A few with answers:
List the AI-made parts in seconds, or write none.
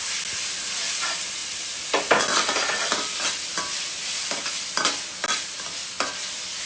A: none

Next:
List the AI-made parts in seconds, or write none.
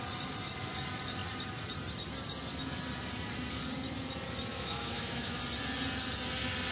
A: 4.5-5.4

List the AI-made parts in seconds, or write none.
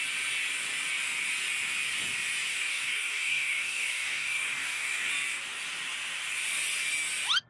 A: 2.5-5.1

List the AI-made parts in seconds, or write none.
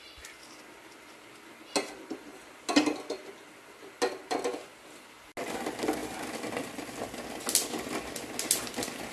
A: none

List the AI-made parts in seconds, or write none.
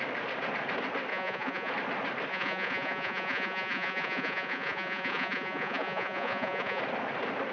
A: 1.1-1.7; 2.3-6.8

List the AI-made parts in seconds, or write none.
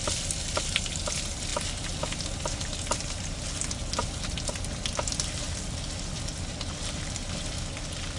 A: none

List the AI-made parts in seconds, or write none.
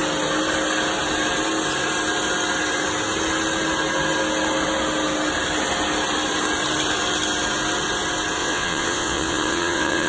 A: 8.4-10.1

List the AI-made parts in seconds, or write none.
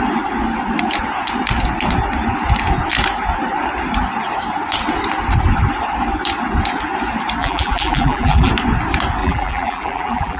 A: 7.4-8.5; 9.2-10.4